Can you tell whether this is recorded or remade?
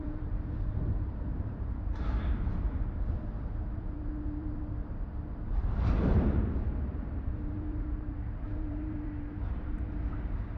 remade